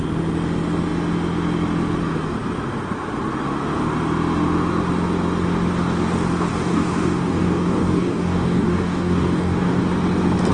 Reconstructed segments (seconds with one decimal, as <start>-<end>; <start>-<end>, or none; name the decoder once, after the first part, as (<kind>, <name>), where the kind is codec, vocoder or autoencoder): 6.5-9.8 (codec, DAC)